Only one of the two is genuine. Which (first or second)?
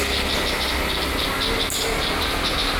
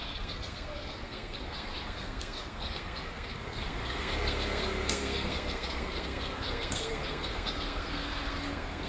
first